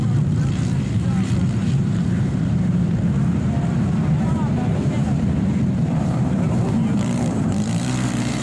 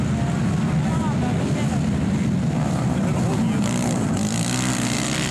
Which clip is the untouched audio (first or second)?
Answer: second